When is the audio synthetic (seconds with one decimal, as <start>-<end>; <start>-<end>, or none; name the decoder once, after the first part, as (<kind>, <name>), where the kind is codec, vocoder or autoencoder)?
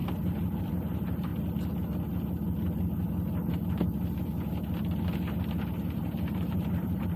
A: 0.6-1.3 (vocoder, BigVGAN v2); 5.6-7.2